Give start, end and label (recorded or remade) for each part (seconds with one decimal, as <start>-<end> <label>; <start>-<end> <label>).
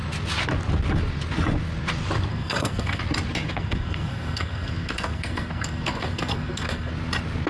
0.0-2.3 recorded; 2.3-3.0 remade; 3.0-3.5 recorded; 3.5-6.9 remade; 6.9-7.5 recorded